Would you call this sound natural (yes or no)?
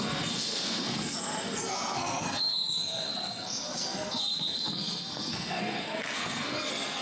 no